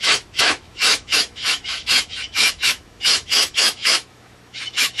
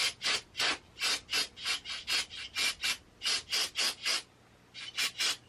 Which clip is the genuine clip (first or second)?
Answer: second